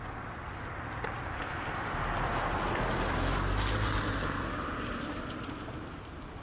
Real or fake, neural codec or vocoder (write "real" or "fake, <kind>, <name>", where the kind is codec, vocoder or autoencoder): real